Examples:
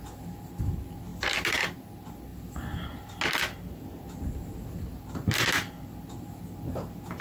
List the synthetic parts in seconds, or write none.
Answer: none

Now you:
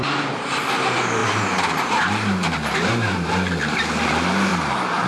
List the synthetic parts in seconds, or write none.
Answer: 0.0-4.5 (vocoder, BigVGAN v2)

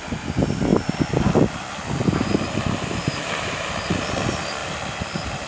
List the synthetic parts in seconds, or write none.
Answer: 4.6-5.5 (vocoder, BigVGAN v2)

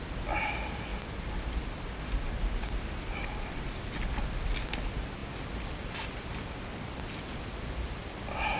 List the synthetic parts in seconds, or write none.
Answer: none

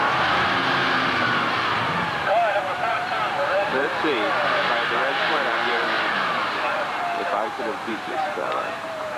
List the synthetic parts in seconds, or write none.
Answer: 0.0-9.2 (vocoder, BigVGAN v2)

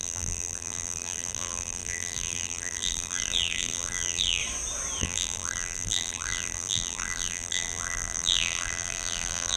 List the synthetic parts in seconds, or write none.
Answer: 0.0-4.4 (vocoder, BigVGAN v2); 5.0-9.6